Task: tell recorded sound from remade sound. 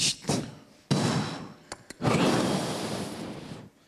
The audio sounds recorded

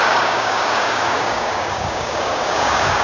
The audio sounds remade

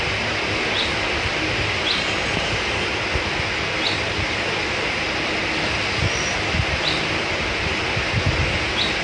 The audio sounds recorded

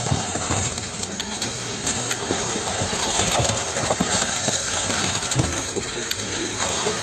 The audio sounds remade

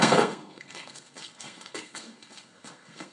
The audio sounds remade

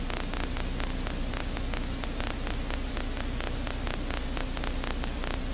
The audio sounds recorded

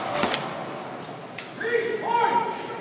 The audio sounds recorded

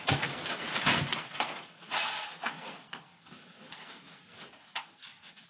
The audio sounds remade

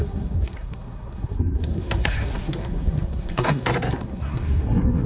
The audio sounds remade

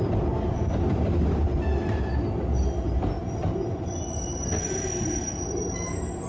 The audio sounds recorded